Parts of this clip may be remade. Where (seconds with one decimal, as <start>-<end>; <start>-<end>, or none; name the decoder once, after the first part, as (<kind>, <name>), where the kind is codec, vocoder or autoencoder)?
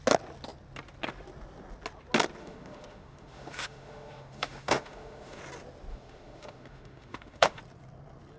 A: 2.4-5.4 (autoencoder, DAC-VAE); 5.9-7.6